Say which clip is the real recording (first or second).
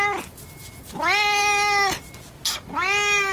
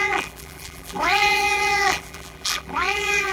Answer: first